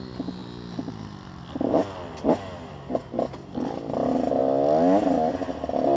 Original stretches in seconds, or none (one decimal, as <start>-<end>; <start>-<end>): 0.0-6.0